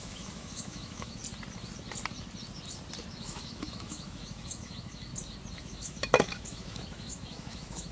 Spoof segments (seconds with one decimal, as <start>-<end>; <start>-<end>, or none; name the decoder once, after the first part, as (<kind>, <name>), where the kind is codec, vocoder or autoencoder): 0.0-1.2 (autoencoder, DAC-VAE); 3.2-5.1; 5.6-7.9